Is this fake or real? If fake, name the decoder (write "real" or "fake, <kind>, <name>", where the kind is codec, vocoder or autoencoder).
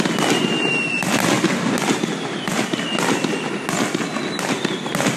real